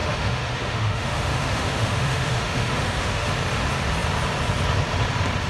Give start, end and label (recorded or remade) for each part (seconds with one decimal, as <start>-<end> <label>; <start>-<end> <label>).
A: 0.0-3.3 remade; 3.3-5.5 recorded